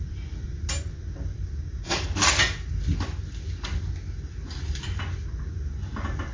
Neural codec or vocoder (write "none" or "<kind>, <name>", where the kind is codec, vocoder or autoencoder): none